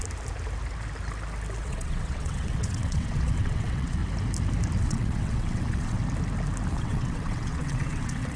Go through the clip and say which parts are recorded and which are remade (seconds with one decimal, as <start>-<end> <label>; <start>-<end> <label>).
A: 0.0-1.6 recorded; 1.6-4.0 remade; 4.0-4.8 recorded; 4.8-6.0 remade; 6.0-6.7 recorded; 6.7-8.4 remade